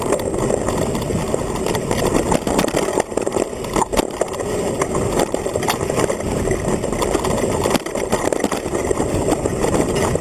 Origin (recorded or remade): recorded